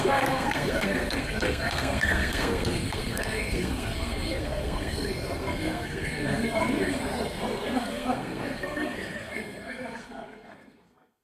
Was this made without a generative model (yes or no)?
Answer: no